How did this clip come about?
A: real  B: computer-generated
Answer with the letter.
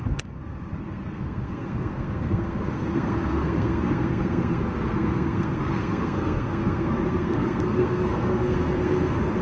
B